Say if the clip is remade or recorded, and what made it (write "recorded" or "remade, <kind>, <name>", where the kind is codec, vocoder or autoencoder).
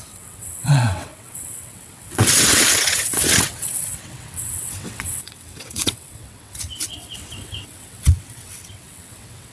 remade, vocoder, WaveNeXt